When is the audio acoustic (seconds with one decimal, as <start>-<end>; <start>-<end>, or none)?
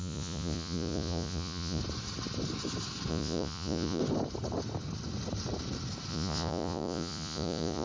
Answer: 1.8-3.1; 4.0-6.1